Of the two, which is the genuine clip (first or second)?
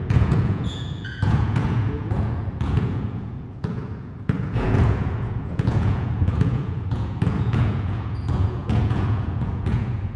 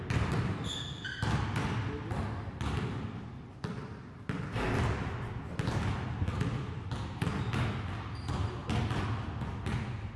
second